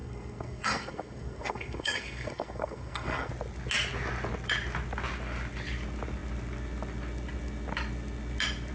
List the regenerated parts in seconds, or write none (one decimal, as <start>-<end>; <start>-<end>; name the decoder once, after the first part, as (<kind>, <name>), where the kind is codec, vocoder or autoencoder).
0.0-3.3 (codec, SNAC)